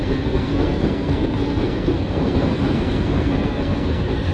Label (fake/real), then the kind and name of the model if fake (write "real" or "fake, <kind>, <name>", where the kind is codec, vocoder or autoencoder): fake, codec, SNAC